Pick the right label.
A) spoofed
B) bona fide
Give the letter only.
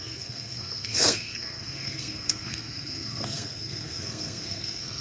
A